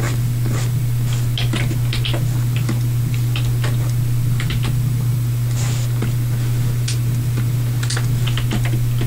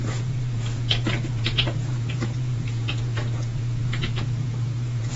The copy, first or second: second